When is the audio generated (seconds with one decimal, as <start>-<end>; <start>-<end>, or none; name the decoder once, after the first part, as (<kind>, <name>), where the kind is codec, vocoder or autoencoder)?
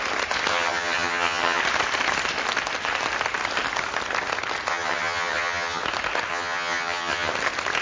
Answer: 0.5-1.6 (vocoder, HiFi-GAN); 4.7-5.8; 6.3-7.3